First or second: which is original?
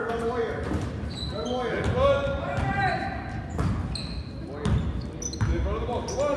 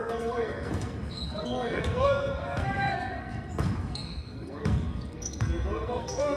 first